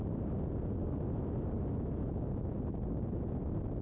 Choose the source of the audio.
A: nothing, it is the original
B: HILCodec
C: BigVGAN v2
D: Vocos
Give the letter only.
A